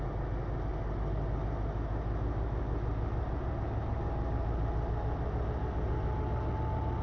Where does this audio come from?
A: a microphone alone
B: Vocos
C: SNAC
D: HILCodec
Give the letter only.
A